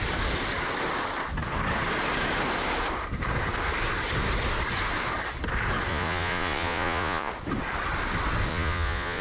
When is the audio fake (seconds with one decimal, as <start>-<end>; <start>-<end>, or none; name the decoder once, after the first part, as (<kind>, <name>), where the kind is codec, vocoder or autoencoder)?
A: 5.9-7.3 (vocoder, Vocos); 8.5-9.2